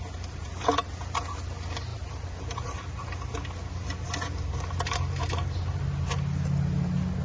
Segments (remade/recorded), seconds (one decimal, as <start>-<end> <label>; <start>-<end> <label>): 0.0-1.9 recorded; 1.9-2.9 remade; 2.9-7.2 recorded